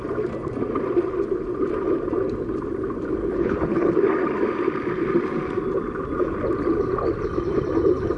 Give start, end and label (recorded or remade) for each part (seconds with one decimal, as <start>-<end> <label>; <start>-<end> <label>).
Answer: 0.0-3.2 recorded; 3.2-3.9 remade; 3.9-8.2 recorded